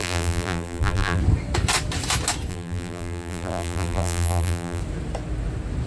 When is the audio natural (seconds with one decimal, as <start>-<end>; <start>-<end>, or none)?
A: 1.2-2.5; 4.8-5.9